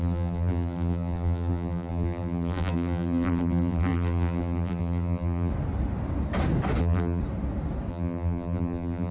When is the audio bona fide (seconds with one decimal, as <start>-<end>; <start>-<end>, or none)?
5.5-6.8; 7.2-7.9